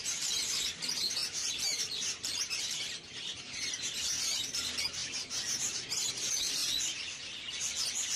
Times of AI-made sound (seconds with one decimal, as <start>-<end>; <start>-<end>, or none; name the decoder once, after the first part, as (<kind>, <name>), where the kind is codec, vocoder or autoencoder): 1.2-4.6 (vocoder, BigVGAN v2); 5.0-6.1